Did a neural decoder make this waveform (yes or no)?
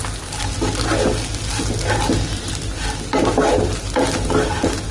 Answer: no